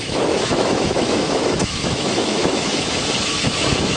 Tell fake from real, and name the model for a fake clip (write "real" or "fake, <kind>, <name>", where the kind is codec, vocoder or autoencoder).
fake, autoencoder, DAC-VAE